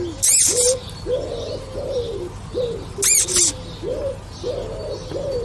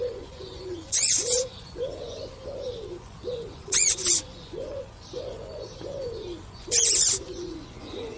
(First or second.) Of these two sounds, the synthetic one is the second